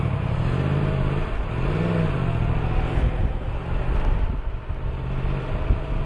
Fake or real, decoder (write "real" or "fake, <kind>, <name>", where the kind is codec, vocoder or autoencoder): real